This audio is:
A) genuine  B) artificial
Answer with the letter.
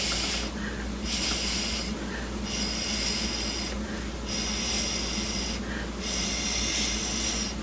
A